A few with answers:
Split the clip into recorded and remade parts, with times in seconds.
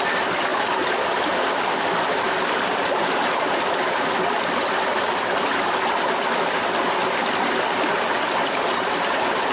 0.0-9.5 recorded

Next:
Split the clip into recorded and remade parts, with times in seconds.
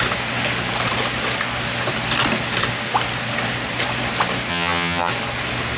0.0-4.5 recorded; 4.5-5.1 remade; 5.1-5.8 recorded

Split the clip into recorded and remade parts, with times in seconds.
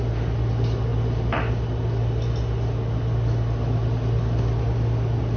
0.0-5.4 recorded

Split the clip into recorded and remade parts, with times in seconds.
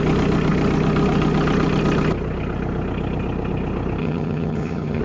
0.0-4.0 recorded; 4.0-5.0 remade